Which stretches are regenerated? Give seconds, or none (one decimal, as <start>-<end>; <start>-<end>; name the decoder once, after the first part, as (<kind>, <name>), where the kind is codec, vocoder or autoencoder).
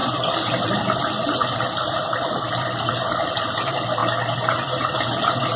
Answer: 0.0-2.9 (vocoder, BigVGAN v2)